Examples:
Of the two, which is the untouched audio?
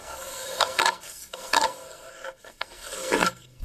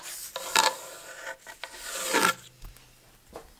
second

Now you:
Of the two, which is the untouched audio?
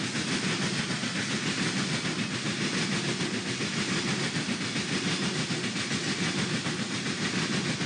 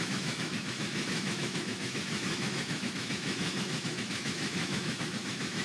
first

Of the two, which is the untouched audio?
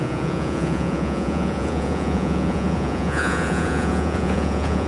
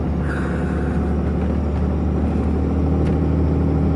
second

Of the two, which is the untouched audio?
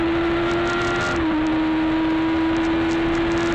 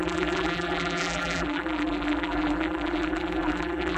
first